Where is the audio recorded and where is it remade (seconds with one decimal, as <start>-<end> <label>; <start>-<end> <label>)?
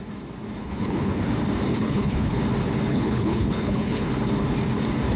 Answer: 0.0-0.6 recorded; 0.6-1.2 remade; 1.2-1.7 recorded; 1.7-2.4 remade; 2.4-2.9 recorded; 2.9-4.1 remade; 4.1-5.2 recorded